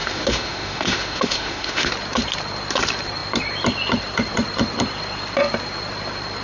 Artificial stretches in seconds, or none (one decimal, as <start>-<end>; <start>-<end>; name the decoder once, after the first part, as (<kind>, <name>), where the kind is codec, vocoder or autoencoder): 0.0-1.9 (autoencoder, DAC-VAE)

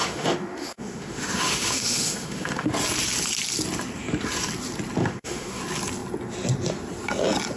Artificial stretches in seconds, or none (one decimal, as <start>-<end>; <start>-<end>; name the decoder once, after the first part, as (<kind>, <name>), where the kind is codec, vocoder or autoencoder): 0.0-2.7 (autoencoder, DAC-VAE); 5.0-5.6

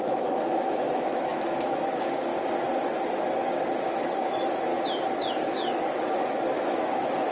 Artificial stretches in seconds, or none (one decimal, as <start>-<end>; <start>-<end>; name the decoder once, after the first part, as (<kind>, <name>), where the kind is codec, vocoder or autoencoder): 0.0-2.3 (autoencoder, DAC-VAE); 3.8-4.7; 5.3-7.3

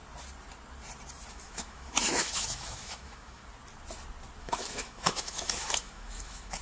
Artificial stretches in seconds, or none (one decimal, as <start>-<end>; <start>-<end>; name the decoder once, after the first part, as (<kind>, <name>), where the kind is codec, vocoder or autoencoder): 1.3-3.4 (autoencoder, DAC-VAE); 4.4-6.6